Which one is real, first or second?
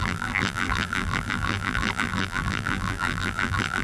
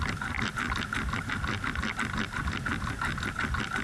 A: second